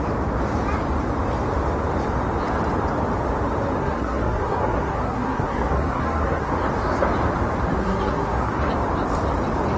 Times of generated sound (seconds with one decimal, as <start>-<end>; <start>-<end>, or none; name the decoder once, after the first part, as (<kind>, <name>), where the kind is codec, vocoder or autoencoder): 3.8-6.5 (codec, SNAC); 7.8-8.7

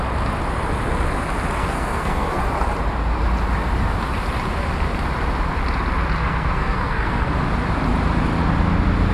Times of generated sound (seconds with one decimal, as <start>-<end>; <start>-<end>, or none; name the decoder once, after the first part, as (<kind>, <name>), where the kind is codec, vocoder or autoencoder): 1.6-2.4 (codec, SNAC); 6.2-7.3